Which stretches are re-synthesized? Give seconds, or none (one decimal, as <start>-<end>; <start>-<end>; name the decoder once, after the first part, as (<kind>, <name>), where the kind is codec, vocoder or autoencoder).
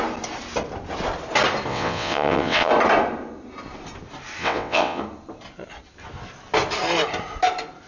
1.7-2.7 (vocoder, WaveNeXt); 4.4-5.0